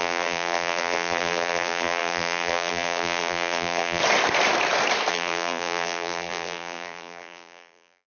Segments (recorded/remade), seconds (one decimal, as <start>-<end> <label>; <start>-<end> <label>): 0.0-4.0 remade; 4.0-5.1 recorded; 5.1-8.1 remade